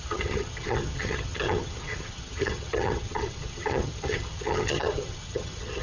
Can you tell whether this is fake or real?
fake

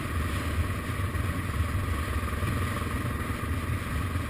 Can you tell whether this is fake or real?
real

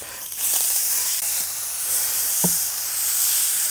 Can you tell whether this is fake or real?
fake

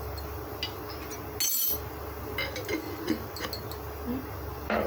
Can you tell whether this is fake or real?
real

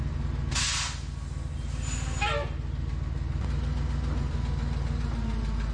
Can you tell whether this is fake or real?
real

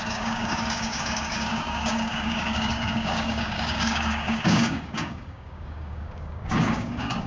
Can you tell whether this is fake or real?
fake